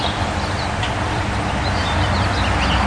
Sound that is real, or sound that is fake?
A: real